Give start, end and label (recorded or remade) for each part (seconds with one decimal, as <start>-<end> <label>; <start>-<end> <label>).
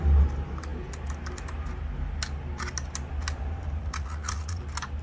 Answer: 0.0-3.8 recorded; 3.8-4.6 remade; 4.6-5.0 recorded